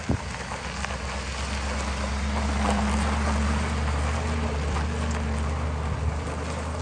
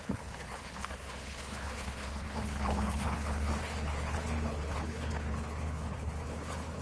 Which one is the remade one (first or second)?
second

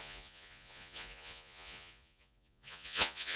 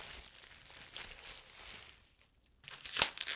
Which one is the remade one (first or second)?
first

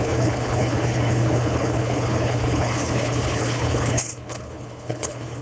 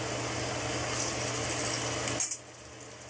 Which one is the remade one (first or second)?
first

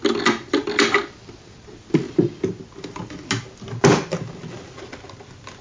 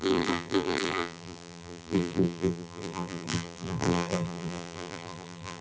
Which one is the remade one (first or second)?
second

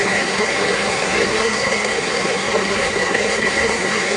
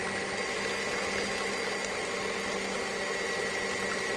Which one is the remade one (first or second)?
first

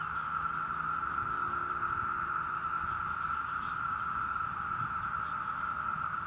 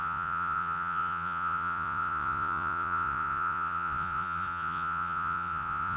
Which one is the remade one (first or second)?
second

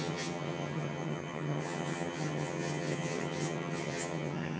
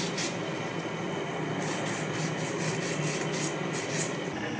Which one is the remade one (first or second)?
first